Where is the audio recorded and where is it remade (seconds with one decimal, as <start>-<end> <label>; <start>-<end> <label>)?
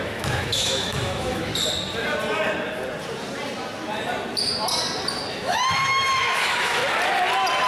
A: 0.0-1.5 remade; 1.5-5.3 recorded; 5.3-6.8 remade; 6.8-7.7 recorded